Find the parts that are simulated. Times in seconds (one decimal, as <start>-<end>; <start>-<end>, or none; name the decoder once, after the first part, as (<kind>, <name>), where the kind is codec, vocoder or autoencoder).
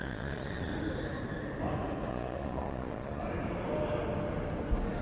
0.0-0.7 (vocoder, Vocos); 2.1-3.2